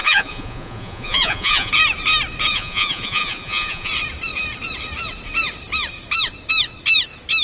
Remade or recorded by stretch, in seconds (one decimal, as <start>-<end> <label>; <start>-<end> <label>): 0.0-1.7 remade; 1.7-2.5 recorded; 2.5-3.9 remade; 3.9-7.4 recorded